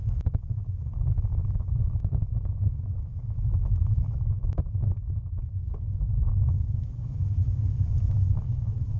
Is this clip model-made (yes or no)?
yes